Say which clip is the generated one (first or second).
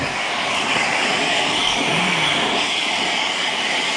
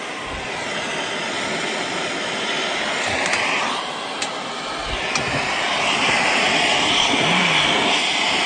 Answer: first